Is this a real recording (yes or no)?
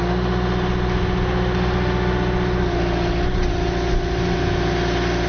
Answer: yes